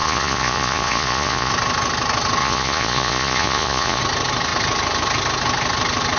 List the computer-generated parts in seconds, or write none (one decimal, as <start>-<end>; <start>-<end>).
0.0-1.5; 2.4-4.0